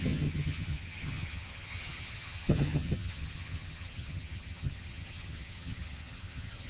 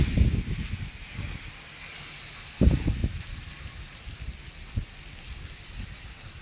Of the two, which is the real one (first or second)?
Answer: second